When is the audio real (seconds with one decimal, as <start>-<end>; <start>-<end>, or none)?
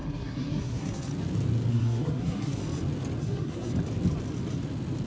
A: 1.1-1.7; 2.6-3.2; 3.7-5.1